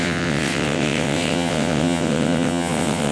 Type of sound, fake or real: fake